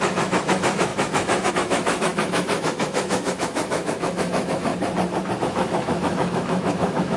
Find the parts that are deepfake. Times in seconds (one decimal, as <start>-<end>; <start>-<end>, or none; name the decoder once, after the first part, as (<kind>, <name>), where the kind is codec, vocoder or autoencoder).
0.0-4.7 (autoencoder, DAC-VAE); 5.4-7.2